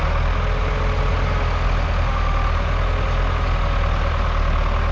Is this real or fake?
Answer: real